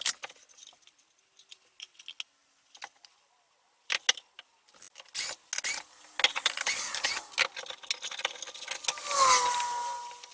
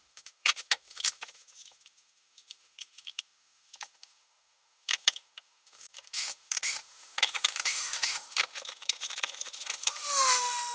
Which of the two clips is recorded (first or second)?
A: first